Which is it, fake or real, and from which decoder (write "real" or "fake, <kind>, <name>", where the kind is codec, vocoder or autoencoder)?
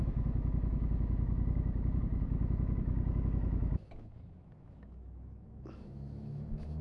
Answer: fake, autoencoder, DAC-VAE